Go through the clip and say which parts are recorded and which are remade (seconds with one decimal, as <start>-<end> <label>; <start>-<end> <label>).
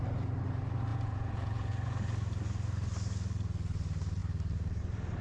0.0-0.9 recorded; 0.9-1.7 remade; 1.7-5.2 recorded